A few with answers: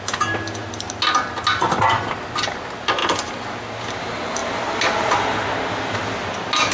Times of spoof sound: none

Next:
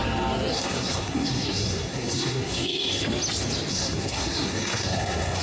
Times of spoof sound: 0.5-3.0 (codec, SNAC); 3.7-5.4